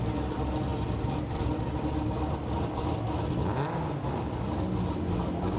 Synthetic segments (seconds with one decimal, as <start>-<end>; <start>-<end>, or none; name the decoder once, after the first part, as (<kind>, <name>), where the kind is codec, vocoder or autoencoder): none